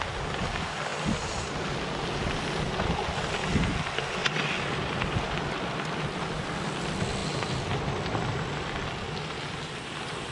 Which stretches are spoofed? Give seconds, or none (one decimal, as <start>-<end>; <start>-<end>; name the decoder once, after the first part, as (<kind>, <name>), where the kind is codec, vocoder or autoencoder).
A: none